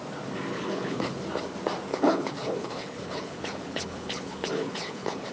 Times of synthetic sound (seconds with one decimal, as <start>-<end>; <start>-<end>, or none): 0.5-1.1; 1.9-5.3